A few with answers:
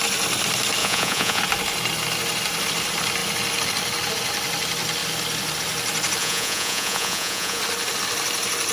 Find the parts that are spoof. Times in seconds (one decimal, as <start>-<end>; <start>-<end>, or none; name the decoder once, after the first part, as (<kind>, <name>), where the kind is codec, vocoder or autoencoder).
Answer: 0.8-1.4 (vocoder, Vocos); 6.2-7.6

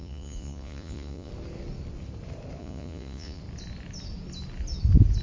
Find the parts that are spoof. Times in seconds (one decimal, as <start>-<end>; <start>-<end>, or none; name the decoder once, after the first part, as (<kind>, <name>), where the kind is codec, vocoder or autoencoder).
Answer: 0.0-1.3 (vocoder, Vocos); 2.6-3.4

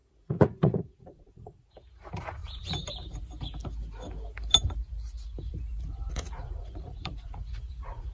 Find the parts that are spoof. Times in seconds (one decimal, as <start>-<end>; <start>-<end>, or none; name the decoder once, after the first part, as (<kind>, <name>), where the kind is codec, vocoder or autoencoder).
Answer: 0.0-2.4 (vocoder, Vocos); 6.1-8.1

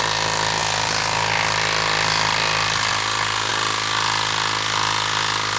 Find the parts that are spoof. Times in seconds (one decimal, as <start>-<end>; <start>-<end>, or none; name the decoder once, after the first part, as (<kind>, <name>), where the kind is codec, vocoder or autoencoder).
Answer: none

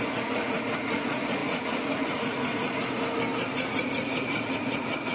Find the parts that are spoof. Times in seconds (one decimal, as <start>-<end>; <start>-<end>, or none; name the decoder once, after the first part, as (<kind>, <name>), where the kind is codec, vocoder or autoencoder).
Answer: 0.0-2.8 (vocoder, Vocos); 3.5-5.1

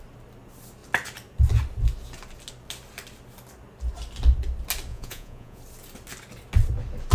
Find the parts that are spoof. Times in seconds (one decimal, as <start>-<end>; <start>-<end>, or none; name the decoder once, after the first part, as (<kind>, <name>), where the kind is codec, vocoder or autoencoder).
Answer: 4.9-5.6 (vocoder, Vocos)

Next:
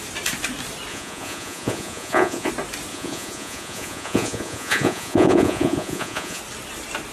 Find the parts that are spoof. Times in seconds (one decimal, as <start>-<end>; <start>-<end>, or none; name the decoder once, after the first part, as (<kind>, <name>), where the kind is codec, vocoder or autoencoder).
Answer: 0.9-2.5 (vocoder, Vocos); 2.9-6.4